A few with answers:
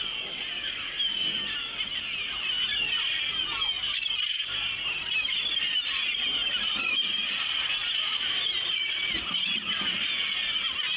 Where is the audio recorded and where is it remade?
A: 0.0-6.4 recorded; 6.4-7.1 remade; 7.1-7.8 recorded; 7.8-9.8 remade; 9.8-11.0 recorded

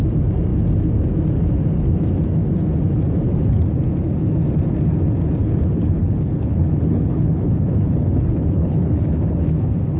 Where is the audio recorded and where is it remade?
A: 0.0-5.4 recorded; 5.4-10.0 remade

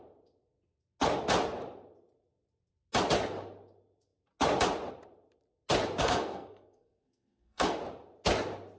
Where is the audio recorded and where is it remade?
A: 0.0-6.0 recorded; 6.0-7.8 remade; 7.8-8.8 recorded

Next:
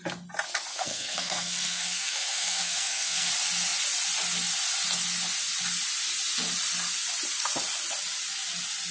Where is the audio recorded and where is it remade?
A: 0.0-0.7 recorded; 0.7-3.3 remade; 3.3-8.9 recorded